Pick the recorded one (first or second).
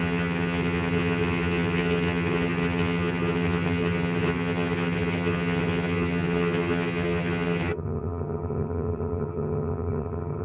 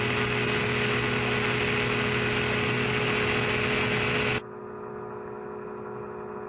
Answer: second